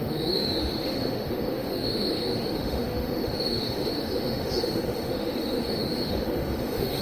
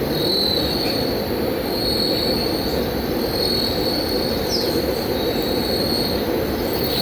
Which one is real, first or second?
second